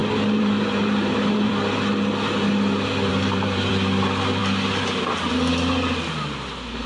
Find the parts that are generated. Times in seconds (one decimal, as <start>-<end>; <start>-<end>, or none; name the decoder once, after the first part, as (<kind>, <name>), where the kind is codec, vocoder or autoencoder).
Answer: 0.0-1.5 (vocoder, BigVGAN v2); 3.1-3.7